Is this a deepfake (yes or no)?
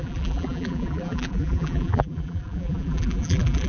yes